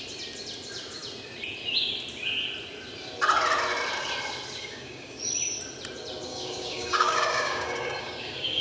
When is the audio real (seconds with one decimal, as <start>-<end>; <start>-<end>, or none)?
0.0-4.6; 5.2-6.3